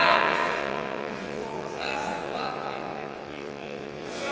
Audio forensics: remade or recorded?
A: remade